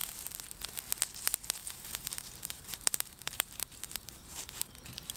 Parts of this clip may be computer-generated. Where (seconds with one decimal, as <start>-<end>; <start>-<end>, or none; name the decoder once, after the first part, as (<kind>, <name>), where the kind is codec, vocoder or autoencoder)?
1.6-4.7 (vocoder, BigVGAN v2)